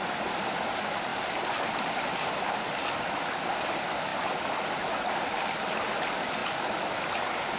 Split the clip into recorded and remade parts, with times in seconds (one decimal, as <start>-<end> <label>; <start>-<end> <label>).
0.0-4.1 recorded; 4.1-4.8 remade; 4.8-6.4 recorded; 6.4-7.0 remade; 7.0-7.6 recorded